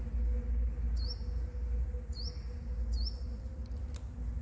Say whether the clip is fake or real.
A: real